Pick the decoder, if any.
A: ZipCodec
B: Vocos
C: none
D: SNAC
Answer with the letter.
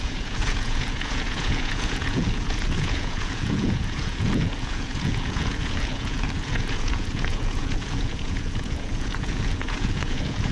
B